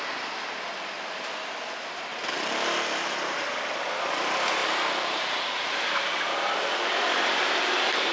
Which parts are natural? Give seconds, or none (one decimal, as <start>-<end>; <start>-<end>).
0.0-2.1; 3.6-4.6